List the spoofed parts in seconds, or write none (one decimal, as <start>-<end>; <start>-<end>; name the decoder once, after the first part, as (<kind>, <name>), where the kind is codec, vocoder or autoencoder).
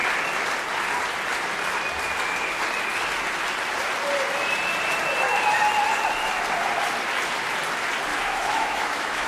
8.1-9.3 (autoencoder, DAC-VAE)